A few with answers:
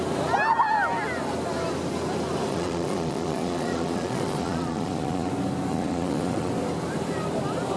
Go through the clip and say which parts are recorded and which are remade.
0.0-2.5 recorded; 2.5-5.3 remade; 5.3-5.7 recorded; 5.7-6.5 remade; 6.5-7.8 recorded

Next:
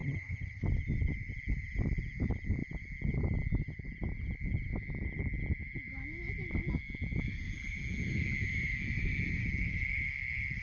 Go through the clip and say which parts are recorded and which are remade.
0.0-0.6 remade; 0.6-10.6 recorded

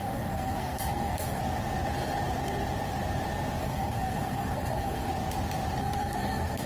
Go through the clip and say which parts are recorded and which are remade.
0.0-1.4 remade; 1.4-3.6 recorded; 3.6-5.1 remade; 5.1-5.8 recorded; 5.8-6.7 remade

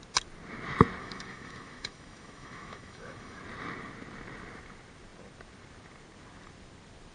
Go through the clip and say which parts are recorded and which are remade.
0.0-1.0 recorded; 1.0-3.4 remade; 3.4-7.1 recorded

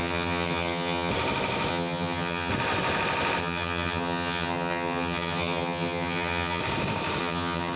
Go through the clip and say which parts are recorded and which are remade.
0.0-1.1 remade; 1.1-1.7 recorded; 1.7-2.5 remade; 2.5-3.4 recorded; 3.4-6.6 remade; 6.6-7.2 recorded; 7.2-7.8 remade

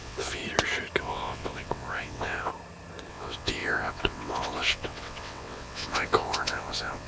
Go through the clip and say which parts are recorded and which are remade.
0.0-0.4 remade; 0.4-1.0 recorded; 1.0-2.5 remade; 2.5-3.1 recorded; 3.1-7.1 remade

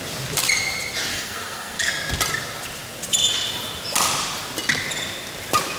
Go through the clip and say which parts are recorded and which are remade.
0.0-1.1 recorded; 1.1-1.9 remade; 1.9-5.8 recorded